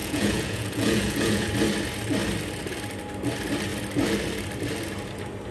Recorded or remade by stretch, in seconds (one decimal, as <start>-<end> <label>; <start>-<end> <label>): 0.0-1.5 remade; 1.5-5.5 recorded